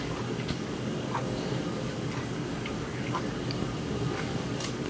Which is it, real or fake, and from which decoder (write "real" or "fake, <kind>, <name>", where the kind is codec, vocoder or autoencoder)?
fake, codec, DAC